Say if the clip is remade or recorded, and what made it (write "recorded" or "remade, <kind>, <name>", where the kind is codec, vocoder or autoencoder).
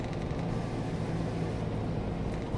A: recorded